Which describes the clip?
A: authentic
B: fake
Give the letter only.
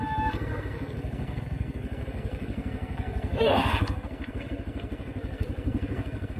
B